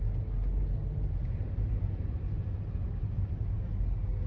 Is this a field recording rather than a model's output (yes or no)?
yes